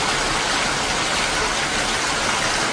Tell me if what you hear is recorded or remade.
recorded